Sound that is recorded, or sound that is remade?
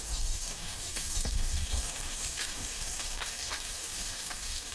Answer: remade